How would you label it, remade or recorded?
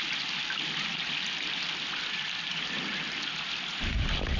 recorded